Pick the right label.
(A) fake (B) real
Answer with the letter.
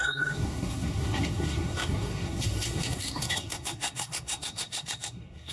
A